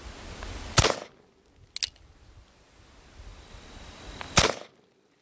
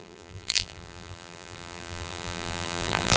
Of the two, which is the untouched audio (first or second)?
first